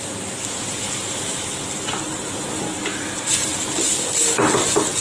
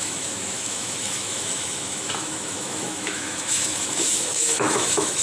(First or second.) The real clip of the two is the first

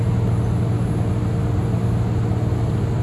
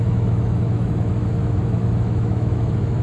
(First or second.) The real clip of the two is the first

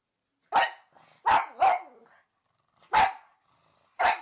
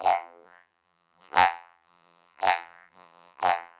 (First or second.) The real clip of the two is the first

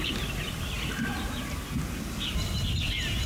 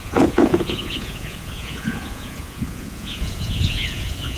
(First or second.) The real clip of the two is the first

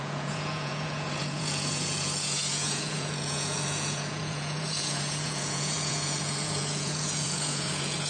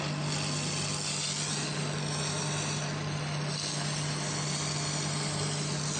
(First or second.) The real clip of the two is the second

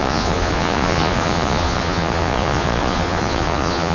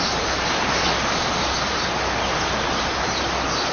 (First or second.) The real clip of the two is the second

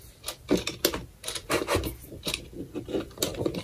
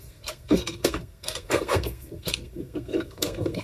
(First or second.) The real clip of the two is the first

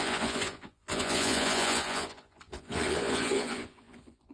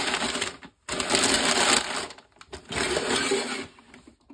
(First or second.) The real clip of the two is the second